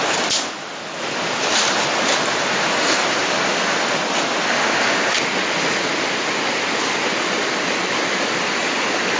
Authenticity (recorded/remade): recorded